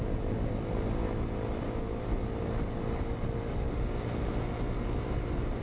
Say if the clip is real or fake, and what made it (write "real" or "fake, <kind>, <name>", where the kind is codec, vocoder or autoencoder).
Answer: real